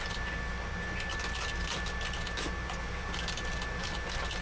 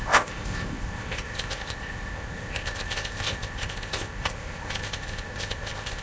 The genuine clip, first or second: first